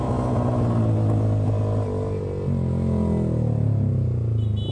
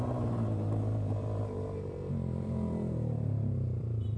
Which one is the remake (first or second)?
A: second